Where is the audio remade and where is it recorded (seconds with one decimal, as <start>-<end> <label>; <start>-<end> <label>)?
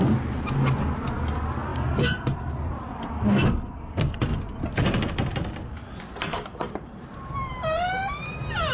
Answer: 0.0-1.7 recorded; 1.7-3.1 remade; 3.1-4.3 recorded; 4.3-4.8 remade; 4.8-6.3 recorded; 6.3-8.0 remade; 8.0-8.7 recorded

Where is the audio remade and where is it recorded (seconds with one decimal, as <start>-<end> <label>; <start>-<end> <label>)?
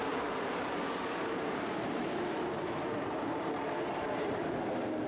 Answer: 0.0-4.4 remade; 4.4-5.1 recorded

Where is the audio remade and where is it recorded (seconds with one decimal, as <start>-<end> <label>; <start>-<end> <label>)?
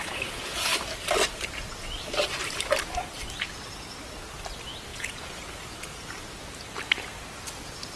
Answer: 0.0-0.7 remade; 0.7-4.9 recorded; 4.9-6.0 remade; 6.0-8.0 recorded